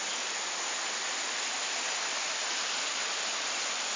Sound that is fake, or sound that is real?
real